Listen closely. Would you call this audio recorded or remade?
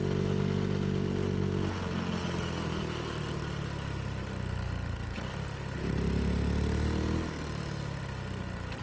recorded